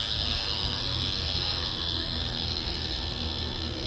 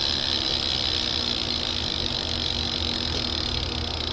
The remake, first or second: first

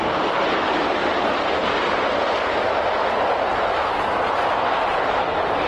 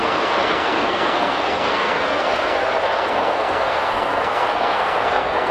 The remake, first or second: second